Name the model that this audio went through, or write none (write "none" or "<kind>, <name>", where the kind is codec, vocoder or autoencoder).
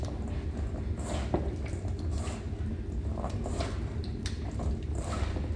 vocoder, BigVGAN v2